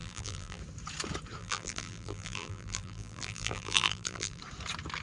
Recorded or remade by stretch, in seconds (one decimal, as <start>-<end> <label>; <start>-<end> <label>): 0.0-0.6 remade; 0.6-1.4 recorded; 1.4-4.4 remade; 4.4-5.0 recorded